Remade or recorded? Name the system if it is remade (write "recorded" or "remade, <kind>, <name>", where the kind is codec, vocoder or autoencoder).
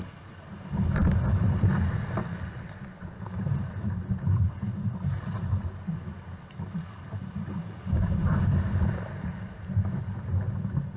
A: recorded